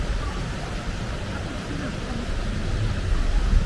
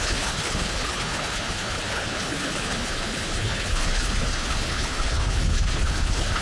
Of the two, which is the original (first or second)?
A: first